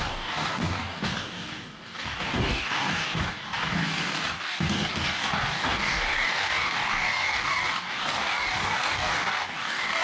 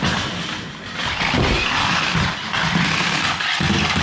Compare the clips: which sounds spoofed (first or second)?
first